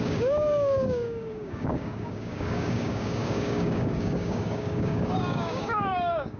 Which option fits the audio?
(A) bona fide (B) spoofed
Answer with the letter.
B